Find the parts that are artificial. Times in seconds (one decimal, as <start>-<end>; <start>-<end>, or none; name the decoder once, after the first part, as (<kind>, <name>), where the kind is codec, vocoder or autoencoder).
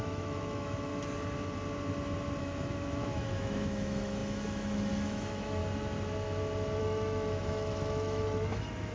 0.0-0.9 (autoencoder, DAC-VAE); 2.4-5.6; 6.8-8.9